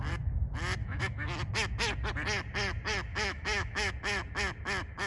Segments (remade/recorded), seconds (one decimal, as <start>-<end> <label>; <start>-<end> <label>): 0.0-0.8 recorded; 0.8-1.4 remade; 1.4-3.1 recorded; 3.1-3.9 remade; 3.9-5.1 recorded